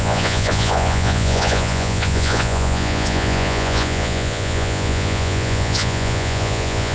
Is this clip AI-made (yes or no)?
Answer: yes